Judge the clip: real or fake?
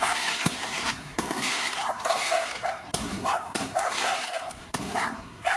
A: fake